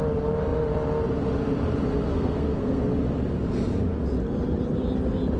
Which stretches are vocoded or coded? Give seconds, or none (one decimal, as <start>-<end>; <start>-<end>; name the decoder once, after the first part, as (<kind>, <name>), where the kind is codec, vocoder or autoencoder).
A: 2.1-2.9 (codec, SNAC)